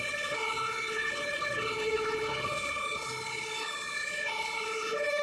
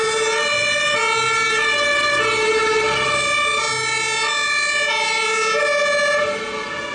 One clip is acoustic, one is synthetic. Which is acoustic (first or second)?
second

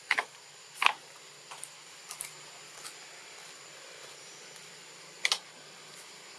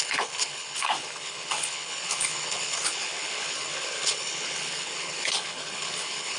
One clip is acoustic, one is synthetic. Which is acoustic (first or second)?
first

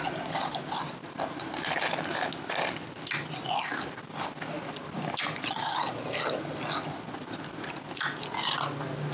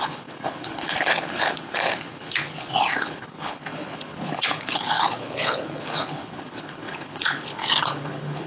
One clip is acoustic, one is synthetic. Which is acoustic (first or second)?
first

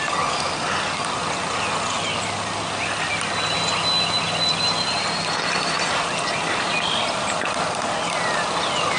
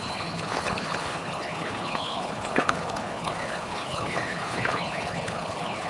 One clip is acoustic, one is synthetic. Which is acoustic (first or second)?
first